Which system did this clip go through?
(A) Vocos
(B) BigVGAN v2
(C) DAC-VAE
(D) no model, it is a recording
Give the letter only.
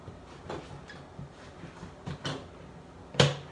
D